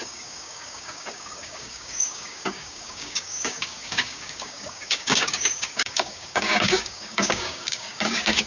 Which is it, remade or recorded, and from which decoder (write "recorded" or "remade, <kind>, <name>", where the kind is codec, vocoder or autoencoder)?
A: remade, codec, DAC